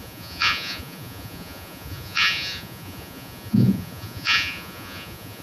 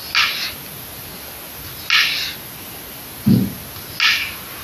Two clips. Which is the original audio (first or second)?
second